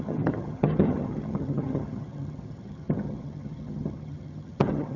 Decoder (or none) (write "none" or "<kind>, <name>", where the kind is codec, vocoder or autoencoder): vocoder, HiFi-GAN